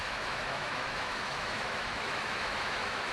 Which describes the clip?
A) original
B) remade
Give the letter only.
B